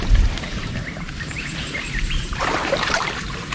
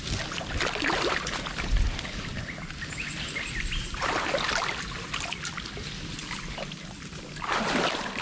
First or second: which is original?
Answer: second